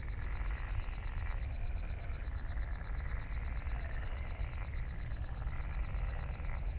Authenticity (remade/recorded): recorded